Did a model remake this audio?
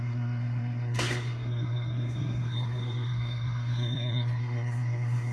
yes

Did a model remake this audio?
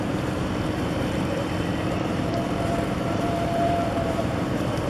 yes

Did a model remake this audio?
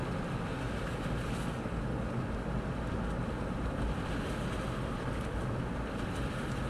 no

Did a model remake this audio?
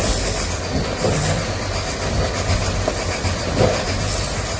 no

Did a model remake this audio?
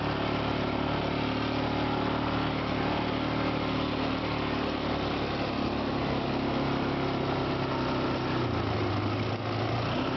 no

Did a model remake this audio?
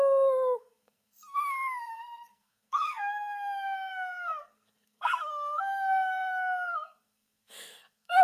yes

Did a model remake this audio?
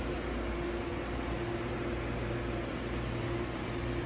no